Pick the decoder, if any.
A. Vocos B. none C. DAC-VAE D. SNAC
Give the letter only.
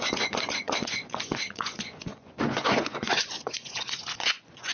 A